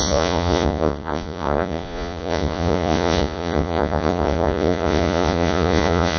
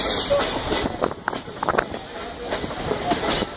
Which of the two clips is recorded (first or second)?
second